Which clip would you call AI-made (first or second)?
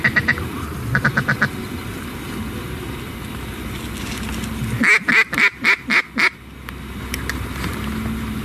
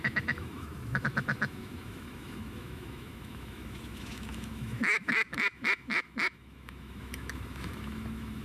second